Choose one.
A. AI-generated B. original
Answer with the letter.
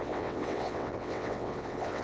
A